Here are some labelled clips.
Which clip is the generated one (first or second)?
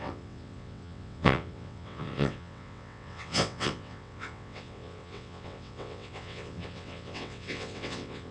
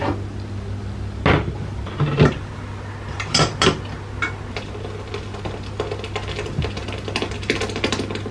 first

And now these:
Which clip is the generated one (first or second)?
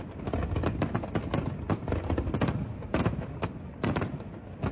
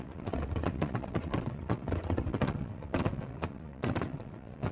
second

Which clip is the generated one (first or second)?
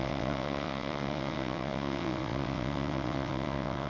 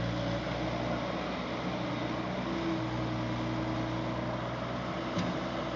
first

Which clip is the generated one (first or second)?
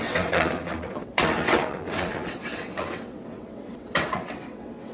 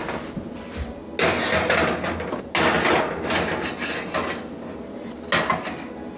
first